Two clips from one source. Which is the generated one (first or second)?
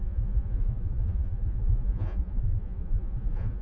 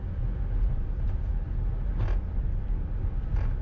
first